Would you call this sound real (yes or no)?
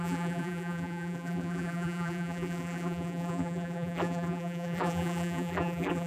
no